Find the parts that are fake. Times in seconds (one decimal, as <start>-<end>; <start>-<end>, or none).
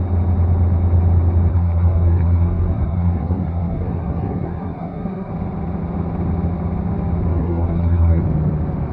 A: 1.5-5.3; 7.3-8.2